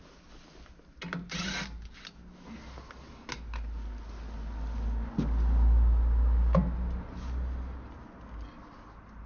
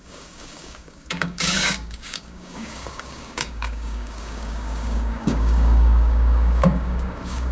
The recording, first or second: first